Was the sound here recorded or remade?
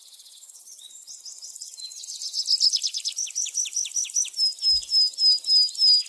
recorded